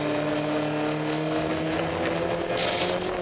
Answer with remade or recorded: recorded